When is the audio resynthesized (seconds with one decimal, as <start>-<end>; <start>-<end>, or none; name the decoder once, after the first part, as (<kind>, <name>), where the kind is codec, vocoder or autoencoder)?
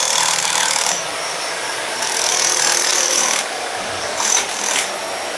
0.4-2.3 (codec, DAC); 2.9-4.9